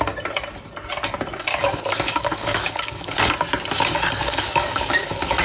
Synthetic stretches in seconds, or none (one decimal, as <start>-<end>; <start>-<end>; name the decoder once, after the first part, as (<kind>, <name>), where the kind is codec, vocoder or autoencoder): 1.5-3.3 (codec, DAC); 4.2-5.4